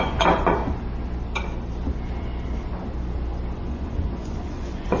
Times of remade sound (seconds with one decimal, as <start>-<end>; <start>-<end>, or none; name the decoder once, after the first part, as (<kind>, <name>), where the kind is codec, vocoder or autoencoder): 0.0-0.6 (vocoder, Vocos); 3.6-5.0